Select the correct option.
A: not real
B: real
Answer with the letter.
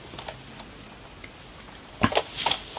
B